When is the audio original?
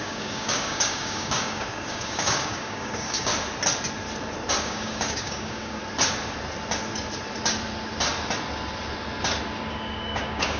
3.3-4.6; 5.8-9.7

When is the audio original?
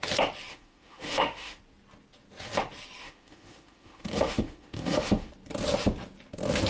0.0-0.5; 1.6-3.0; 5.3-6.7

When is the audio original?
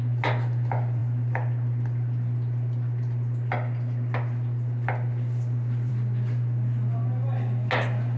0.0-8.2